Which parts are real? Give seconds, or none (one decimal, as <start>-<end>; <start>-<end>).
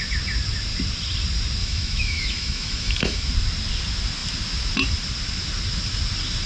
0.0-1.6; 3.3-6.5